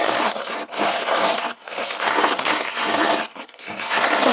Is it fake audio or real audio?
fake